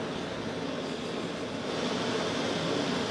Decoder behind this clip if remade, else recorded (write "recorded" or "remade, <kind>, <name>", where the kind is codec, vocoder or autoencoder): recorded